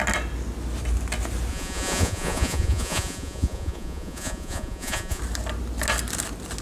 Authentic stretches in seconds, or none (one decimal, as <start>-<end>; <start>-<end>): 0.0-1.5; 5.2-6.6